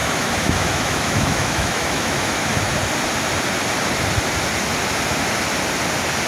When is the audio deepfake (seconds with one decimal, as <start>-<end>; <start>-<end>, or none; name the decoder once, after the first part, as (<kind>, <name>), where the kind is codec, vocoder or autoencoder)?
0.0-2.7 (autoencoder, DAC-VAE)